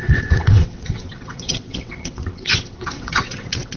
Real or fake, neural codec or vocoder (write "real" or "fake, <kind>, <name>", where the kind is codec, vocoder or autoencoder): fake, vocoder, WaveNeXt